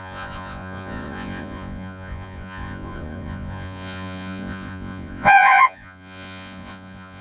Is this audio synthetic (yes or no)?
yes